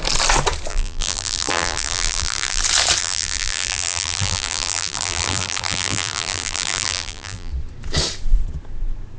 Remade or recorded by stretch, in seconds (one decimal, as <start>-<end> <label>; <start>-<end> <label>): 0.0-0.7 recorded; 0.7-2.6 remade; 2.6-3.0 recorded; 3.0-7.5 remade; 7.5-9.2 recorded